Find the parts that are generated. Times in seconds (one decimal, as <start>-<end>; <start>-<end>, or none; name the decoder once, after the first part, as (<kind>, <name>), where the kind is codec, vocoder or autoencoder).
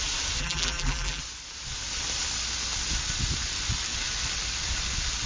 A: 0.4-1.2 (vocoder, BigVGAN v2)